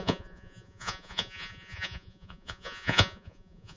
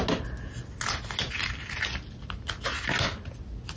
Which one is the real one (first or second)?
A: second